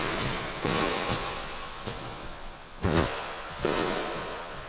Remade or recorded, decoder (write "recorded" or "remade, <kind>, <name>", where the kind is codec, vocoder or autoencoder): remade, vocoder, Vocos